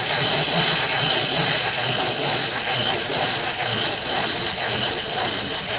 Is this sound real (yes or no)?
no